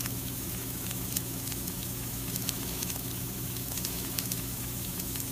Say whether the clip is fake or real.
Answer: fake